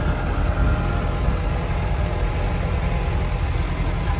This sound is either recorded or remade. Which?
recorded